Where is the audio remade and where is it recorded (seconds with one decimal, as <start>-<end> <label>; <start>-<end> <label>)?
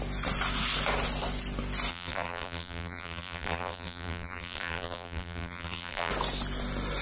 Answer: 0.0-1.9 recorded; 1.9-6.1 remade; 6.1-7.0 recorded